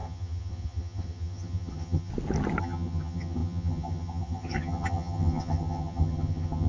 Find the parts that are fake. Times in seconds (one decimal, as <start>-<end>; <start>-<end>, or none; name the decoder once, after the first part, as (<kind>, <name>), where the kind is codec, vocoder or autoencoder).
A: 0.0-2.1 (vocoder, HiFi-GAN); 2.6-6.7